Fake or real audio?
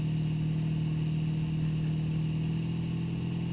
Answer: real